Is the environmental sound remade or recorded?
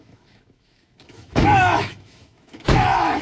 remade